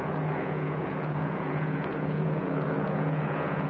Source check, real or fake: fake